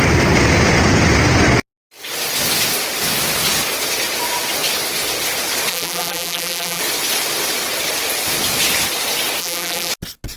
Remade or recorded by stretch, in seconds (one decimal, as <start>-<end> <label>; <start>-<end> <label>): 0.0-5.7 recorded; 5.7-6.8 remade; 6.8-9.4 recorded; 9.4-9.9 remade; 9.9-10.4 recorded